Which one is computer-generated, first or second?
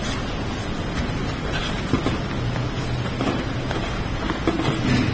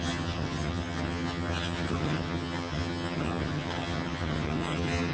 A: second